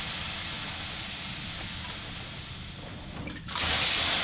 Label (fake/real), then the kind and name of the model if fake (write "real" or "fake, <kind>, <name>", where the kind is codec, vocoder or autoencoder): real